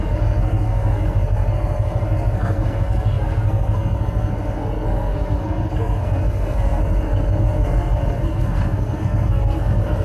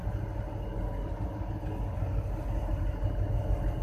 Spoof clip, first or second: first